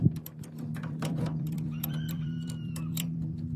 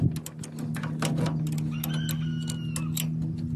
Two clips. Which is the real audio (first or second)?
second